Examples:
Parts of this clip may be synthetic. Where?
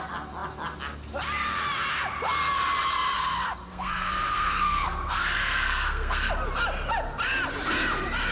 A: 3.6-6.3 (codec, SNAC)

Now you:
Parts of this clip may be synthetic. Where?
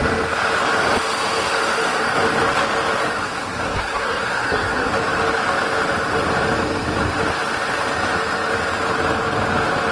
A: 3.2-4.9 (codec, SNAC)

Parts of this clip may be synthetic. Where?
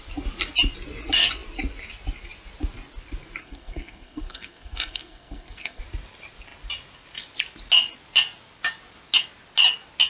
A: 3.4-5.8 (codec, SNAC)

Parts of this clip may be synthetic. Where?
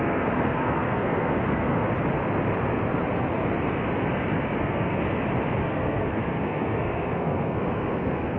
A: 0.0-1.8 (codec, SNAC); 4.6-5.0; 5.6-8.4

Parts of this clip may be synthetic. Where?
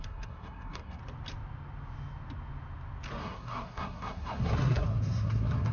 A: 0.0-1.0 (codec, SNAC); 3.2-5.7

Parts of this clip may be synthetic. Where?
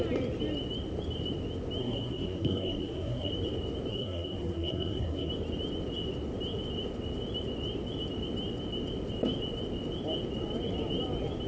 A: 1.8-3.3 (codec, SNAC); 3.9-5.3